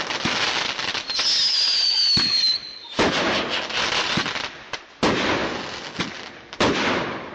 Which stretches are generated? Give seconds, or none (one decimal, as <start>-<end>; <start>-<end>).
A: none